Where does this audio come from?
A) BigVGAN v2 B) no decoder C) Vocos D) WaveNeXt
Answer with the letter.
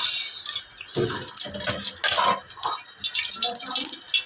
B